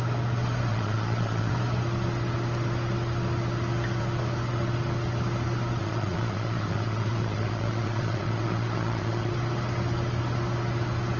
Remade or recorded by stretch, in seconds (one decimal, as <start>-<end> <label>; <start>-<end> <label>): 0.0-0.7 recorded; 0.7-1.5 remade; 1.5-5.8 recorded; 5.8-9.3 remade; 9.3-11.2 recorded